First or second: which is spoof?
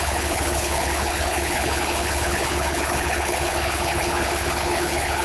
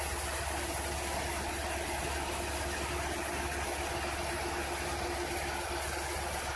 first